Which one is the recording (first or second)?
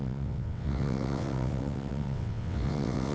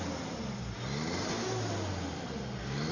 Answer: second